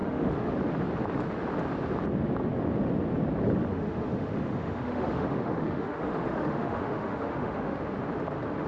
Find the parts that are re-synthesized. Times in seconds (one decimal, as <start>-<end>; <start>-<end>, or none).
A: 0.0-0.5; 3.7-7.8